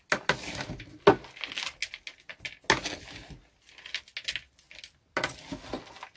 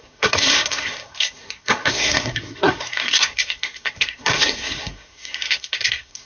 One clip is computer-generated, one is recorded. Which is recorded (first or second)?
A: first